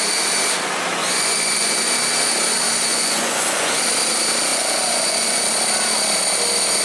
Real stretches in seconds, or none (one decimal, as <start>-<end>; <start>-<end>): 0.0-1.0; 1.8-2.9; 3.8-4.5; 5.5-6.8